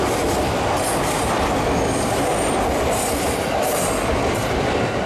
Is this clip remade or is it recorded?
recorded